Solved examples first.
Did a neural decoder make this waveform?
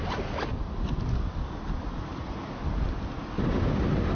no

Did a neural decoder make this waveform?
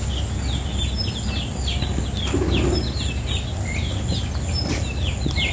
no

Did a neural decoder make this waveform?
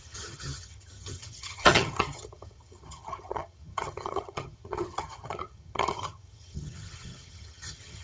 yes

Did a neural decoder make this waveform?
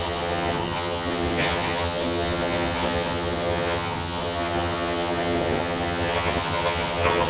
yes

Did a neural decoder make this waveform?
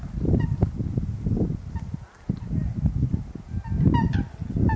no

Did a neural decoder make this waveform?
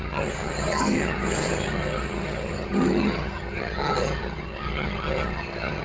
yes